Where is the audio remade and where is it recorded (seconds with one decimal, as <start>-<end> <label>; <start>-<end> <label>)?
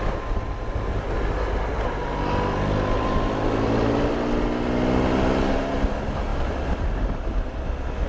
0.0-8.1 recorded